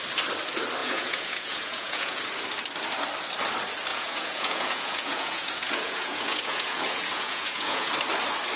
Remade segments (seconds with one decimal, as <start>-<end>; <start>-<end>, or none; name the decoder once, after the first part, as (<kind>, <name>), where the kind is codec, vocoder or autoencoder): 0.8-2.2 (vocoder, Vocos); 3.9-7.9